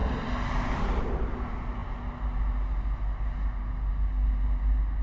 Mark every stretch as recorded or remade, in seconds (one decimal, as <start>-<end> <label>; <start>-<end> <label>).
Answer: 0.0-5.0 recorded

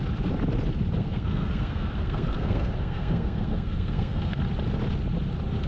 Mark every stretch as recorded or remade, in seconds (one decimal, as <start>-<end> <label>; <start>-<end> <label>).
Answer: 0.0-1.0 recorded; 1.0-4.4 remade; 4.4-5.7 recorded

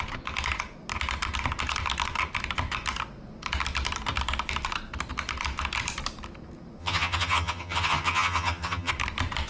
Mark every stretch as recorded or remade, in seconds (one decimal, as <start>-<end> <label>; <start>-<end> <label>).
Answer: 0.0-6.8 recorded; 6.8-8.9 remade; 8.9-9.5 recorded